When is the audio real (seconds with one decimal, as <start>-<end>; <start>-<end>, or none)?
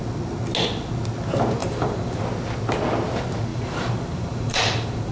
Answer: 0.0-1.6; 2.2-3.5